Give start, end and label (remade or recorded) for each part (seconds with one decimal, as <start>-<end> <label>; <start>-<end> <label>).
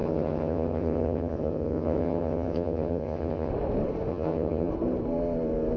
0.0-3.5 remade; 3.5-4.1 recorded; 4.1-4.7 remade; 4.7-5.8 recorded